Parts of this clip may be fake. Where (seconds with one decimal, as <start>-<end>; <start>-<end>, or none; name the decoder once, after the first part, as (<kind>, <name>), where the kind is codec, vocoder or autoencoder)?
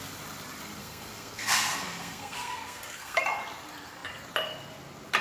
0.8-3.2 (codec, SNAC)